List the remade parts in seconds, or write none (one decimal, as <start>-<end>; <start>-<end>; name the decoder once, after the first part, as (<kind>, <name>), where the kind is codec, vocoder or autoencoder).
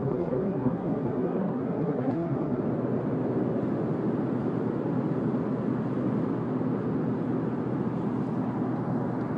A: 0.0-2.6 (codec, SNAC)